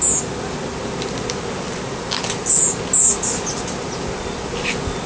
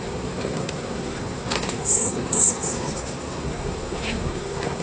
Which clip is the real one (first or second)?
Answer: first